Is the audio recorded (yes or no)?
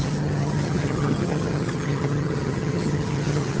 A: no